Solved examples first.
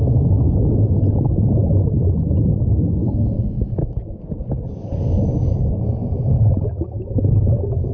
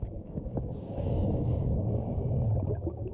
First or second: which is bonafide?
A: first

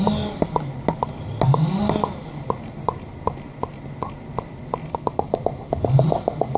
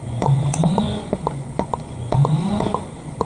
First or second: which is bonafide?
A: first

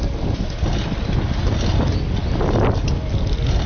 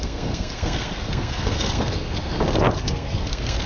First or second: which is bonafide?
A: first